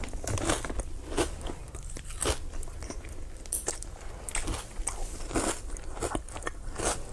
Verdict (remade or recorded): recorded